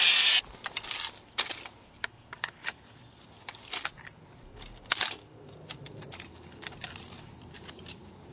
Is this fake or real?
real